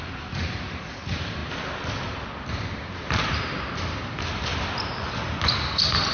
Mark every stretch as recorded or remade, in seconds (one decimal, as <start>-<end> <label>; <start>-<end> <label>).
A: 0.0-1.4 remade; 1.4-2.5 recorded; 2.5-4.5 remade; 4.5-6.1 recorded